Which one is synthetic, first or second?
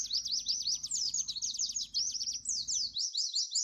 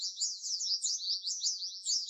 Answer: second